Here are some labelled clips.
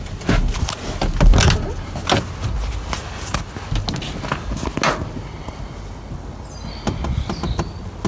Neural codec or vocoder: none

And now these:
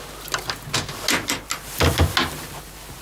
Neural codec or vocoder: none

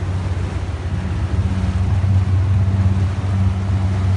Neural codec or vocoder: none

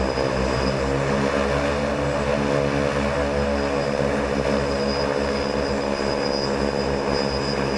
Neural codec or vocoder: none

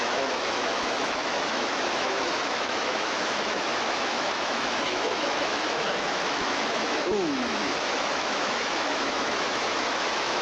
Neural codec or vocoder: autoencoder, DAC-VAE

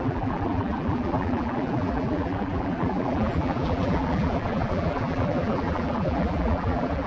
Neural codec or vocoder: vocoder, BigVGAN v2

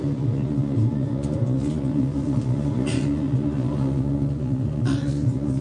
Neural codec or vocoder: vocoder, Vocos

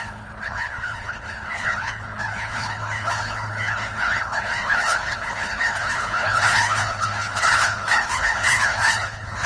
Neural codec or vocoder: codec, HILCodec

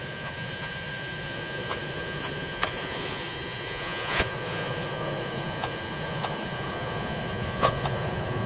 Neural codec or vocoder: vocoder, Vocos